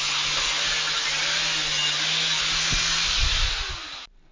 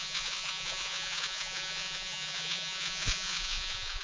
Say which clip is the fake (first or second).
second